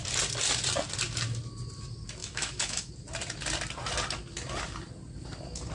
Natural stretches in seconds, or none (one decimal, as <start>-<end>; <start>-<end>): 0.0-2.2; 2.9-5.7